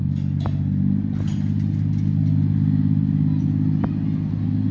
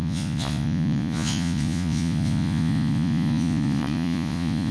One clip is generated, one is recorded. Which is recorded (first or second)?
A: first